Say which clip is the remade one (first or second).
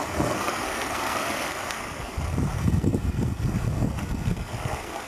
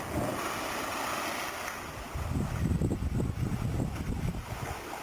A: first